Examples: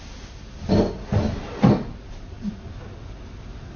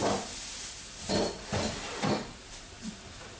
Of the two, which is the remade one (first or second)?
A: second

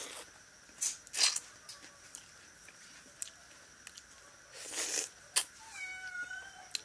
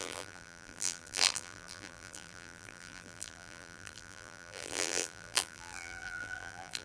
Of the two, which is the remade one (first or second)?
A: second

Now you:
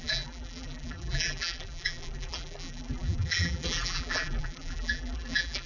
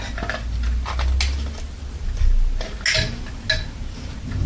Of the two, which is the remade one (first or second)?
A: first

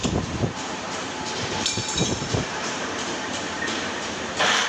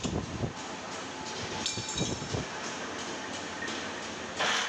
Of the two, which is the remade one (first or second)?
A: first